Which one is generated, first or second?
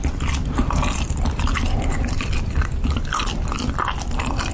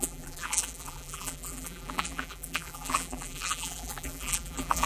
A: second